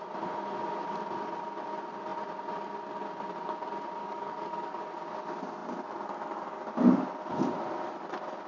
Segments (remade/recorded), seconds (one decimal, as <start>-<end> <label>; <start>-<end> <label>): 0.0-4.0 recorded; 4.0-4.8 remade; 4.8-8.5 recorded